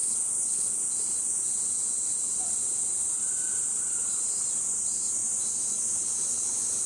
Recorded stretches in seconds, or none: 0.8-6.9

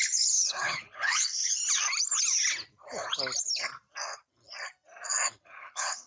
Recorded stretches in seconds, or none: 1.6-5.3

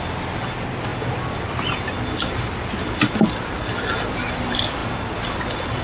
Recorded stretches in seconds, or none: 0.0-5.8

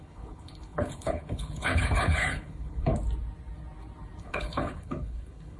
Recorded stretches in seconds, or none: 2.9-4.2

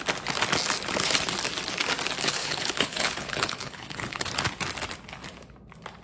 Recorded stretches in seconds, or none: 0.0-2.4; 4.3-6.0

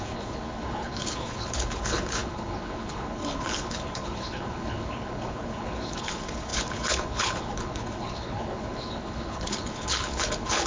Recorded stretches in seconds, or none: none